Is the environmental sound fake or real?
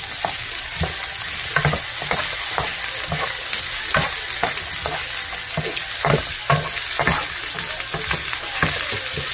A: real